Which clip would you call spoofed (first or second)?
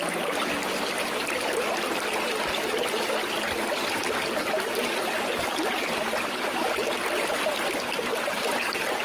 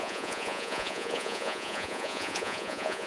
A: second